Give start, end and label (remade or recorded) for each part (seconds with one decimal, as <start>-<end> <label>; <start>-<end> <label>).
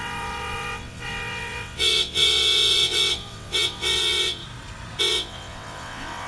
0.0-4.4 remade; 4.4-5.0 recorded; 5.0-6.3 remade